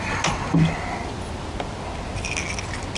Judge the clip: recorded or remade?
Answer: recorded